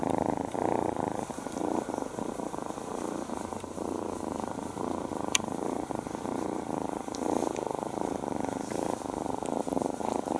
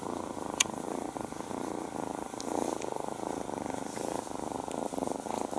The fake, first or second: first